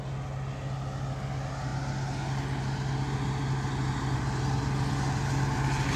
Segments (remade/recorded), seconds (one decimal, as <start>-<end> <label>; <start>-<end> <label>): 0.0-6.0 recorded